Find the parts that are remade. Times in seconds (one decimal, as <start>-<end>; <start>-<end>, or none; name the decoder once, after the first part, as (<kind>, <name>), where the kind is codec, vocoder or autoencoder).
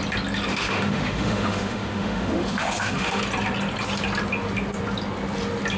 0.5-3.2 (autoencoder, DAC-VAE)